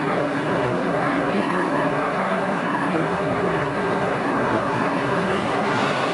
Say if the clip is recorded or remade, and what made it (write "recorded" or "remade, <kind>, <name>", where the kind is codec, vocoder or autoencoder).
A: remade, codec, SNAC